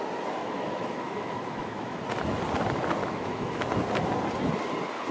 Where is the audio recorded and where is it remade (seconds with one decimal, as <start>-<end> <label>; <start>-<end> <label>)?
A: 0.0-0.4 recorded; 0.4-2.0 remade; 2.0-3.0 recorded; 3.0-3.7 remade; 3.7-5.1 recorded